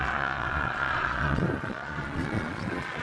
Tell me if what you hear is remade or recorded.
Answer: remade